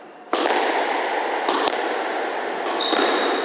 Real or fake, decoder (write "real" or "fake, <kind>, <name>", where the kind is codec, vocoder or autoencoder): real